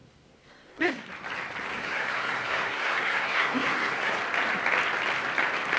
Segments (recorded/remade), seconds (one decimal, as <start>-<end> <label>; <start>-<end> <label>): 0.0-1.1 remade; 1.1-1.7 recorded; 1.7-4.2 remade; 4.2-5.8 recorded